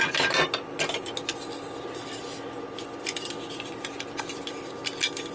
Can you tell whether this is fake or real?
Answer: real